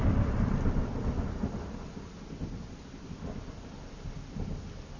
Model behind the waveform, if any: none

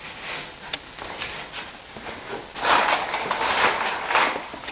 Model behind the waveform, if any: none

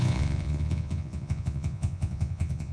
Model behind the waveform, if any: vocoder, Vocos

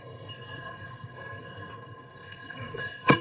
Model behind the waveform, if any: codec, SNAC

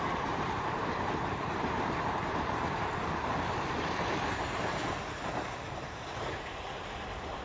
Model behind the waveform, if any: vocoder, BigVGAN v2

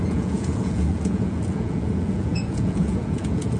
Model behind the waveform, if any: vocoder, Vocos